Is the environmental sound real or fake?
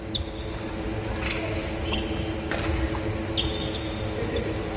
real